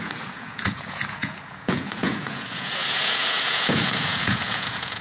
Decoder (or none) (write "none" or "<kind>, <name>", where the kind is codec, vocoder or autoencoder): vocoder, Vocos